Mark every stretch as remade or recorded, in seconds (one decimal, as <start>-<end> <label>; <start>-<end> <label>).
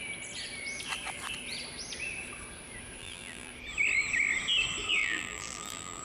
0.0-3.0 recorded; 3.0-3.5 remade; 3.5-5.0 recorded; 5.0-6.0 remade